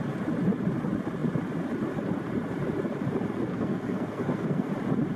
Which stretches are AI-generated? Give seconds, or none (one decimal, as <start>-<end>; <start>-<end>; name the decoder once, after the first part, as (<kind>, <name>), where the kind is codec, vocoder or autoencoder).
3.5-4.7 (codec, SNAC)